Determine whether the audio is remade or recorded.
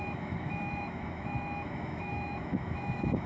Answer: remade